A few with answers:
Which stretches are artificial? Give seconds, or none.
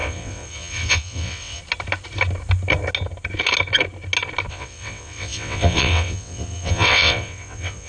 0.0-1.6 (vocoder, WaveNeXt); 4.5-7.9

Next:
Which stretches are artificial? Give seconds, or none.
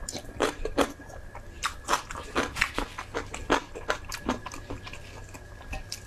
0.0-2.0 (vocoder, BigVGAN v2); 3.4-4.7